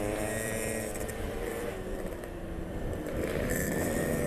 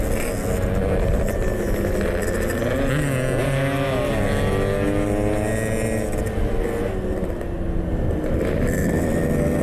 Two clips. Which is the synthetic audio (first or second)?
first